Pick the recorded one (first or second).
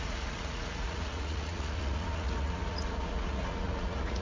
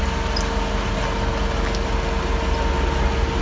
second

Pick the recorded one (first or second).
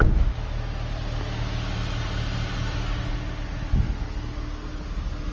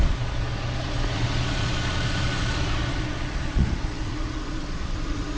first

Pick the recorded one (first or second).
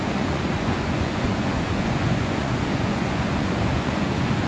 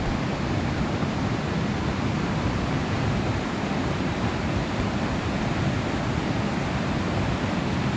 second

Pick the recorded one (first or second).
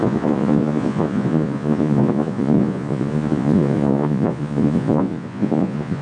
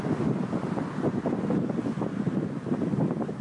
second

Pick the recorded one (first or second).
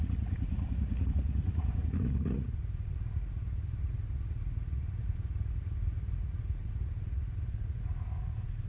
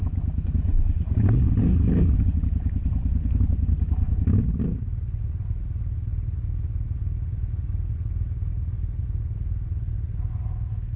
second